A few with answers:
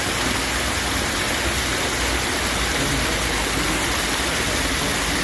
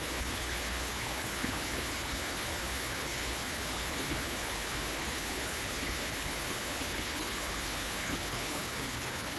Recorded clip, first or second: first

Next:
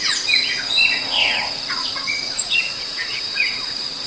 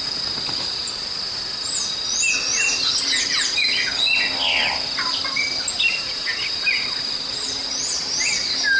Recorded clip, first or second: second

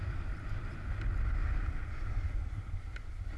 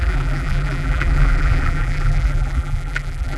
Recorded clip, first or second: first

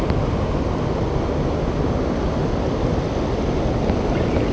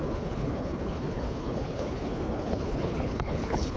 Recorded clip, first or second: first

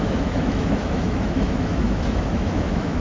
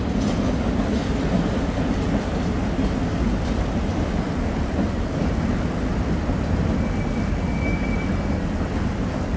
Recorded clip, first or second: second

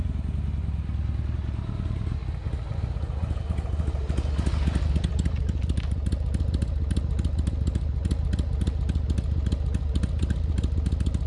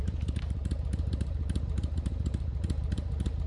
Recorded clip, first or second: first